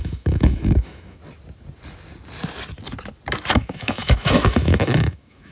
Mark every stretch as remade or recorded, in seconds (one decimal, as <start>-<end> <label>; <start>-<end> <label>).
0.0-1.2 remade; 1.2-3.5 recorded; 3.5-5.5 remade